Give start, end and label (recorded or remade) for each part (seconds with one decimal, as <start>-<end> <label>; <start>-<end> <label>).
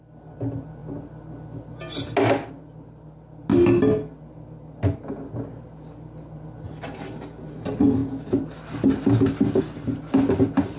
0.0-10.8 recorded